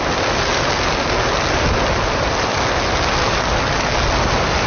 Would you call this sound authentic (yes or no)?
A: yes